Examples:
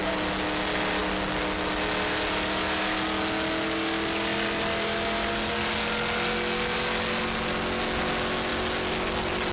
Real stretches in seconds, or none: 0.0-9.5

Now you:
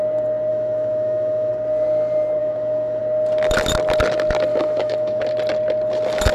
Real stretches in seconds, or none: 0.0-0.5; 1.5-2.4; 3.0-4.5; 5.2-6.3

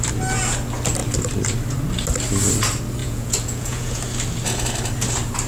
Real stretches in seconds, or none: 0.0-3.0; 4.0-5.5

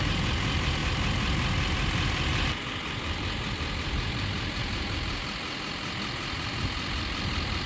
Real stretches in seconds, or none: 0.0-7.7

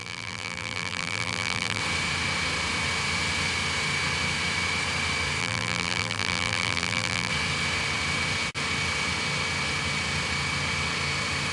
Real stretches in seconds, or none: 1.8-5.4; 7.3-11.5

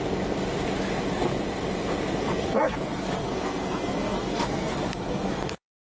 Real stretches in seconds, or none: 0.0-2.2

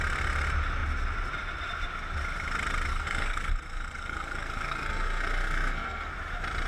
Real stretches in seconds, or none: 0.0-2.9; 6.1-6.7